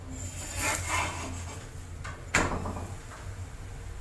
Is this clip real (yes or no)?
yes